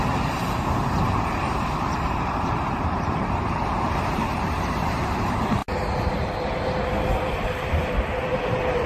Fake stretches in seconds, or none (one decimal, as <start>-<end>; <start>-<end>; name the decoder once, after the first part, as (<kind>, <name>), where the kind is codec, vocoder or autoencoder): 0.0-5.6 (vocoder, BigVGAN v2); 6.1-8.9